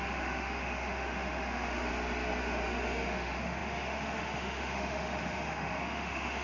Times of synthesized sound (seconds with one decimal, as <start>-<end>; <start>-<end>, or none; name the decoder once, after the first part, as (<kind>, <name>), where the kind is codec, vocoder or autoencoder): 0.0-1.9 (autoencoder, DAC-VAE); 2.4-6.4